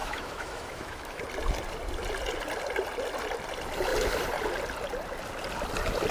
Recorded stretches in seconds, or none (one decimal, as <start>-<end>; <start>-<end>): 1.2-6.1